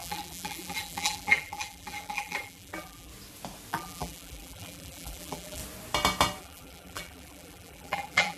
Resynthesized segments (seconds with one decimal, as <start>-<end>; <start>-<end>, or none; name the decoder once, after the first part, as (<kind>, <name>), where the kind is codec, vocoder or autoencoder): 0.0-3.1 (vocoder, BigVGAN v2); 3.7-5.6; 6.4-8.4